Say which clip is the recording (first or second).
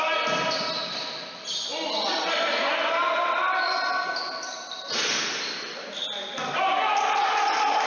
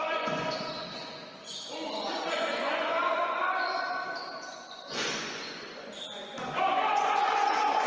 first